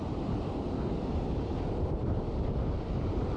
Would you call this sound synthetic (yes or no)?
no